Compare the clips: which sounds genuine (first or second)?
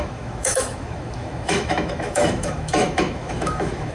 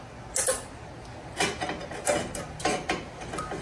second